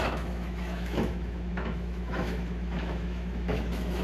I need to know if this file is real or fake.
fake